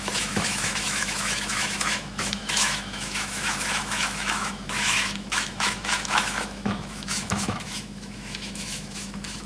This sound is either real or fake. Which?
fake